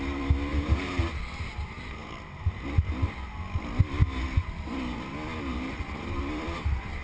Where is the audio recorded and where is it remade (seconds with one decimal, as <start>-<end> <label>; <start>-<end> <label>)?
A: 0.0-0.5 recorded; 0.5-1.2 remade; 1.2-5.5 recorded; 5.5-6.2 remade; 6.2-7.0 recorded